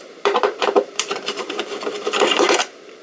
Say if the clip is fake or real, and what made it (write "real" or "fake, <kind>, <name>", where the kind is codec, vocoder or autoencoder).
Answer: fake, vocoder, BigVGAN v2